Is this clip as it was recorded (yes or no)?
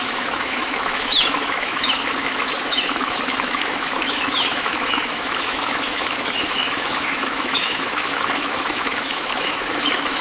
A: no